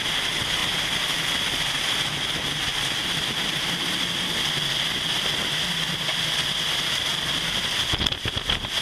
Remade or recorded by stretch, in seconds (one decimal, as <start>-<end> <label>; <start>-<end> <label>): 0.0-0.6 recorded; 0.6-1.5 remade; 1.5-2.7 recorded; 2.7-3.4 remade; 3.4-8.8 recorded